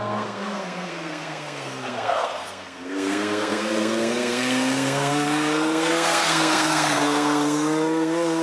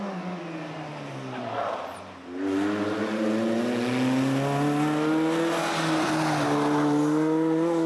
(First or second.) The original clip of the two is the second